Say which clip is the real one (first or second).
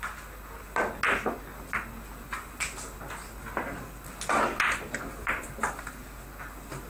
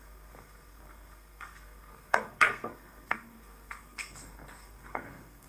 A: first